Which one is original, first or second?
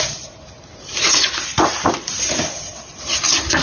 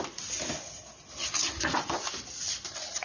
second